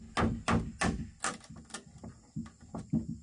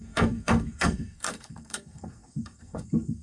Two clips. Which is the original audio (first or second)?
first